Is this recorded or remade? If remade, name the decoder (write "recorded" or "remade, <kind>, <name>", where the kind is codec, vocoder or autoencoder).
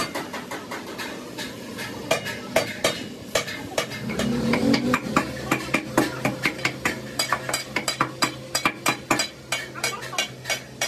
recorded